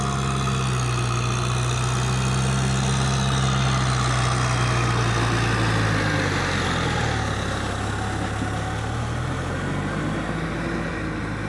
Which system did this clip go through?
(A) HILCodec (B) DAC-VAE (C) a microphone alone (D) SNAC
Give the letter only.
C